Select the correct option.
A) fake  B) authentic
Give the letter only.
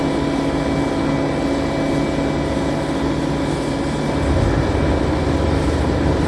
B